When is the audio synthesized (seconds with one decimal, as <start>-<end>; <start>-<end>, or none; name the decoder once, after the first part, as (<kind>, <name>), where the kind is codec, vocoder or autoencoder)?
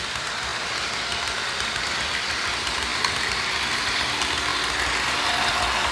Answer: 0.0-0.5 (vocoder, BigVGAN v2); 1.9-4.5; 5.5-5.9